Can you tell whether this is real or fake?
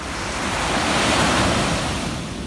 real